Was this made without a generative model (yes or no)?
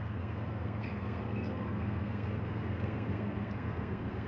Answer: no